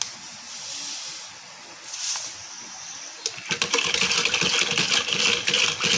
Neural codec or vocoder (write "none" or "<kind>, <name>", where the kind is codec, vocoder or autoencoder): vocoder, BigVGAN v2